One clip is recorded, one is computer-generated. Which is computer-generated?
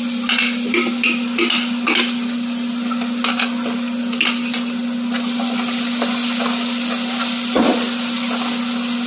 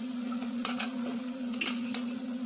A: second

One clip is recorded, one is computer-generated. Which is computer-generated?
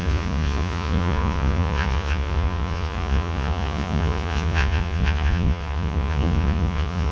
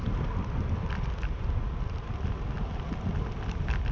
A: first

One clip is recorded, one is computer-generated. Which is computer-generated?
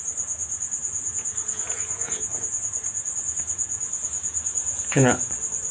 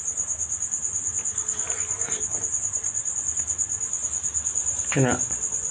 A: first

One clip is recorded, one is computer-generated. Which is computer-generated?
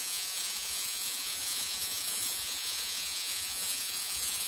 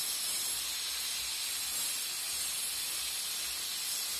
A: first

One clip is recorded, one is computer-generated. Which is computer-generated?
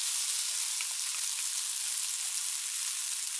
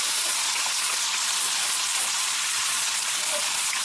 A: second